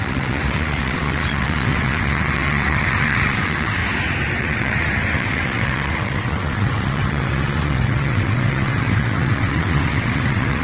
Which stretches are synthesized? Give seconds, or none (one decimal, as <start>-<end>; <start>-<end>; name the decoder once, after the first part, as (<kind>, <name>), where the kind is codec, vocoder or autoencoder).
0.0-3.8 (vocoder, WaveNeXt); 4.4-10.6